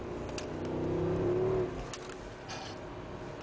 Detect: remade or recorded recorded